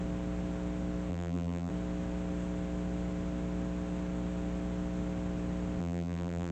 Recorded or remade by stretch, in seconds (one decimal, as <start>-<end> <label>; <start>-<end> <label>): 0.0-1.1 recorded; 1.1-1.7 remade; 1.7-5.8 recorded; 5.8-6.5 remade